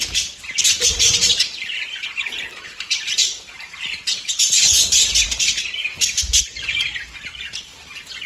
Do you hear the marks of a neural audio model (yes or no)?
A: yes